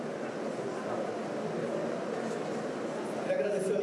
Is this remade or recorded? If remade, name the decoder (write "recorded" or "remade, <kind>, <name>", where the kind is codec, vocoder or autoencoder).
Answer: recorded